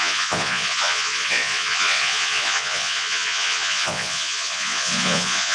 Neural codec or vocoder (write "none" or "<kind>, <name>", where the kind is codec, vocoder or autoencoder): vocoder, Vocos